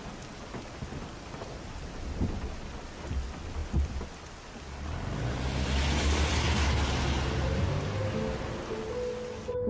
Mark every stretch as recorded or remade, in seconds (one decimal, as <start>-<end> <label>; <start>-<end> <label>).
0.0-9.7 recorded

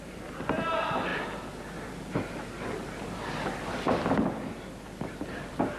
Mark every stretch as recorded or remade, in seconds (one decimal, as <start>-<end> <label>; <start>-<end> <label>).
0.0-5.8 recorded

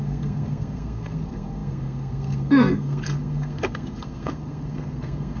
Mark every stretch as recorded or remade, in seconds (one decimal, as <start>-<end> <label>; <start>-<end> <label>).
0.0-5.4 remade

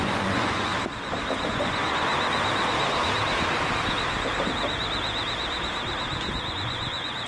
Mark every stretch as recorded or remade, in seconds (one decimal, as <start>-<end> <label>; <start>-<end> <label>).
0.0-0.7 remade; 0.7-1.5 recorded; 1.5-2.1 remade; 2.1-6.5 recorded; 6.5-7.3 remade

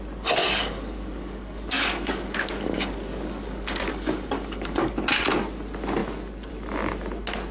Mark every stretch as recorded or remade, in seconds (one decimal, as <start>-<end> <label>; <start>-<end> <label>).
0.0-0.4 recorded; 0.4-4.9 remade; 4.9-7.5 recorded

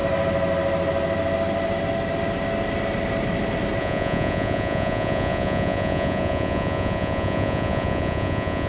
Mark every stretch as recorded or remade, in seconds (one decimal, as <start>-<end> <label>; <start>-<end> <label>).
0.0-3.8 recorded; 3.8-8.7 remade

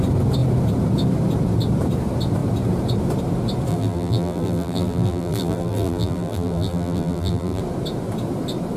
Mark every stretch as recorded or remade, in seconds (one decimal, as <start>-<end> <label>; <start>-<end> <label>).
0.0-3.7 recorded; 3.7-7.6 remade; 7.6-8.8 recorded

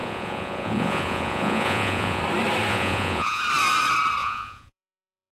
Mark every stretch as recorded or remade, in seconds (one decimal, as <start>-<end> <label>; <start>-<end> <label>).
0.0-2.2 remade; 2.2-2.7 recorded; 2.7-3.4 remade; 3.4-4.2 recorded; 4.2-5.3 remade